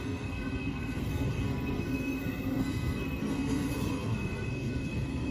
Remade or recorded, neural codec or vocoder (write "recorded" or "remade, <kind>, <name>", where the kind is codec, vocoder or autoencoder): remade, codec, SNAC